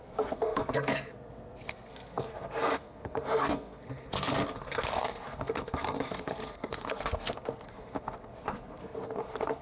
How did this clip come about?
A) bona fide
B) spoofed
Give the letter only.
B